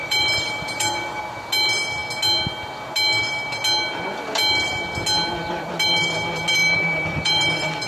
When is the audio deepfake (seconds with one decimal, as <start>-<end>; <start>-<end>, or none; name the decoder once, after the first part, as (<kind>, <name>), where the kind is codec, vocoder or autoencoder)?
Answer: 0.0-1.2 (vocoder, BigVGAN v2); 6.6-7.9